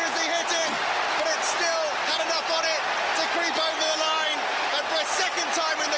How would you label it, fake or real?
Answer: real